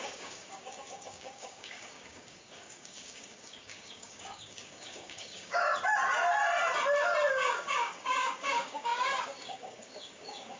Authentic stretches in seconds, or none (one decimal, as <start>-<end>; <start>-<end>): 5.7-7.3